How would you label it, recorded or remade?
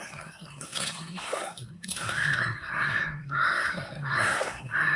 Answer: remade